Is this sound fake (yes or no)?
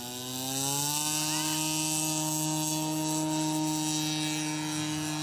no